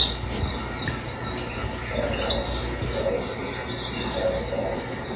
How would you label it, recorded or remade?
recorded